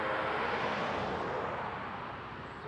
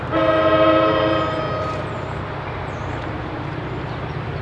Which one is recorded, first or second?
first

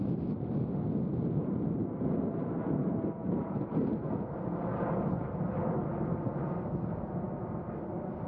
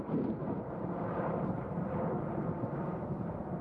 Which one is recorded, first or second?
first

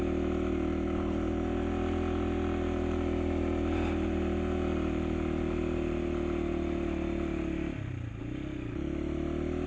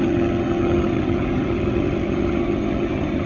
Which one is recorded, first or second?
first